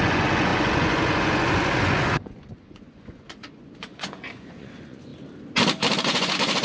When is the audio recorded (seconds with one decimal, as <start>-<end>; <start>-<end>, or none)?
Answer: 5.1-6.0